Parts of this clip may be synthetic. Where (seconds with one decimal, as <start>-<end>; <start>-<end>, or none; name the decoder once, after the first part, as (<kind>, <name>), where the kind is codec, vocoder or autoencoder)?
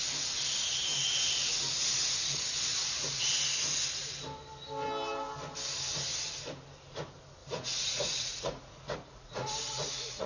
2.7-3.3 (vocoder, Vocos); 7.4-10.3